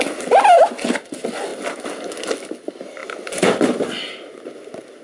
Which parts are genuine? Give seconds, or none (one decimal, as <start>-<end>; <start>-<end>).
0.0-5.0